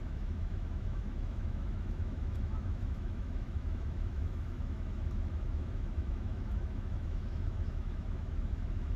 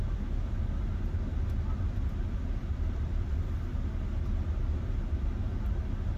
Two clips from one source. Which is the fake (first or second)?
first